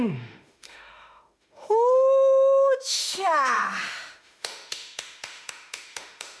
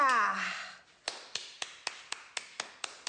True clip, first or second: second